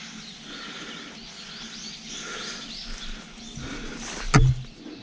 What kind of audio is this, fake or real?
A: real